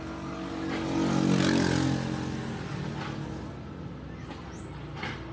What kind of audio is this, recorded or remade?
recorded